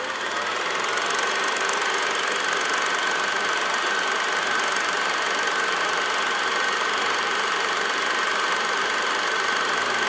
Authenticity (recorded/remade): recorded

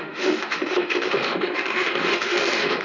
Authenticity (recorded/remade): remade